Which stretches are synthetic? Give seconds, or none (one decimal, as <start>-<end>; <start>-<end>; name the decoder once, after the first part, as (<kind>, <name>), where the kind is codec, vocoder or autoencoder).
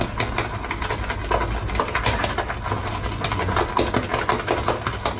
none